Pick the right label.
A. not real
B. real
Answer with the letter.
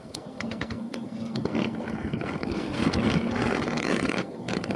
A